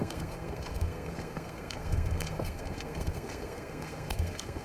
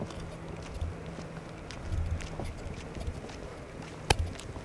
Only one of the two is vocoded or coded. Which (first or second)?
first